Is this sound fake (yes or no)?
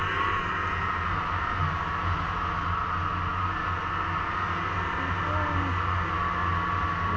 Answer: no